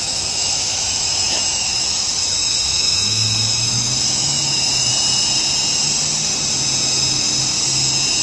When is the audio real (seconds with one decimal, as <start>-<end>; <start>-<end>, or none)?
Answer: 4.9-8.2